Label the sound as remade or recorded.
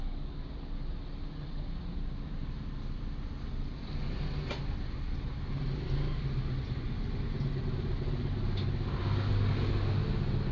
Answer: recorded